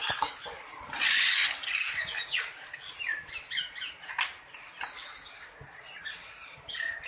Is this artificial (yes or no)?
no